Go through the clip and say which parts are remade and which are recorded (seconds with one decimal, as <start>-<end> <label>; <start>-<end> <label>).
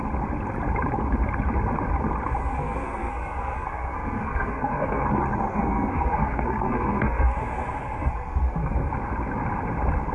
0.0-2.4 recorded; 2.4-5.1 remade; 5.1-5.5 recorded; 5.5-7.4 remade; 7.4-8.0 recorded; 8.0-8.9 remade; 8.9-10.1 recorded